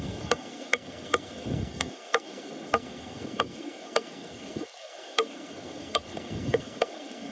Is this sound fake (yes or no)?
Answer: yes